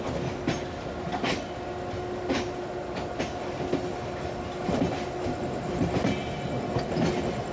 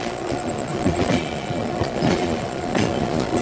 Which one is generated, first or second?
second